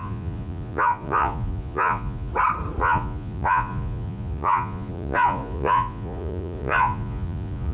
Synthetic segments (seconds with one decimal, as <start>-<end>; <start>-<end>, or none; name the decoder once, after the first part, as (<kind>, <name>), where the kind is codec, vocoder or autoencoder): 0.0-2.3 (vocoder, Vocos); 2.8-7.7